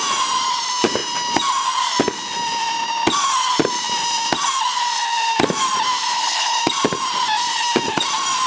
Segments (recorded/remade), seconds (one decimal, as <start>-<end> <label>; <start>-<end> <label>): 0.0-6.1 recorded; 6.1-6.6 remade; 6.6-8.5 recorded